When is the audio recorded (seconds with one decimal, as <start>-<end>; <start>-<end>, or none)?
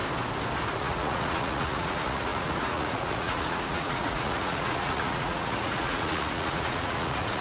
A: 0.0-0.8